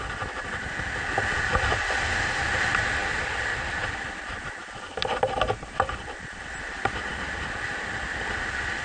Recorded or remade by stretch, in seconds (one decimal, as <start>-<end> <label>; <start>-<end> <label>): 0.0-8.8 recorded